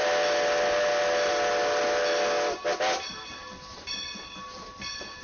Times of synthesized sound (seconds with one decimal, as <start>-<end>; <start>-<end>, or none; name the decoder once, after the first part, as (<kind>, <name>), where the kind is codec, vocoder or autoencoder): none